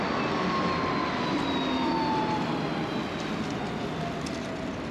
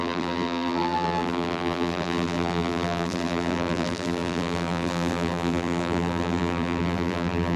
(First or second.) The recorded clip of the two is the first